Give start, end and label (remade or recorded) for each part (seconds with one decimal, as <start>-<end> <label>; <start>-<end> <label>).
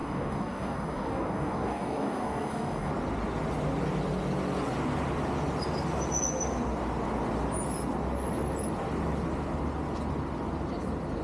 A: 0.0-2.9 remade; 2.9-11.2 recorded